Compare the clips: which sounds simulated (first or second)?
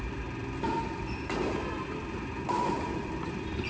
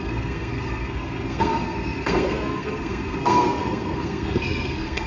second